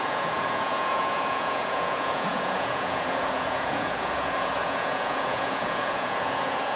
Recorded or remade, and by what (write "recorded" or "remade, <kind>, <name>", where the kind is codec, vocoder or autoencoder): remade, vocoder, Vocos